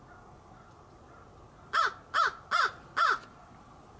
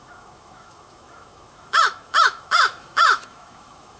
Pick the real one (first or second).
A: first